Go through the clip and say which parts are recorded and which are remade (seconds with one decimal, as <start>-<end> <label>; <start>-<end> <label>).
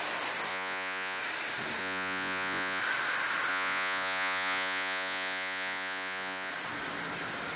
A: 0.0-0.5 recorded; 0.5-1.2 remade; 1.2-1.8 recorded; 1.8-2.8 remade; 2.8-3.5 recorded; 3.5-6.5 remade; 6.5-7.6 recorded